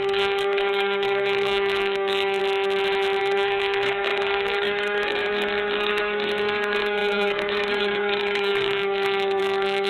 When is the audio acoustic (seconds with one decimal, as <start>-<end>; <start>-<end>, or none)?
2.4-3.2